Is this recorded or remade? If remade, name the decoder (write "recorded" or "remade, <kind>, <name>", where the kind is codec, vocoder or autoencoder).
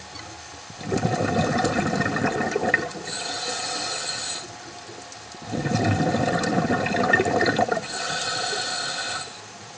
recorded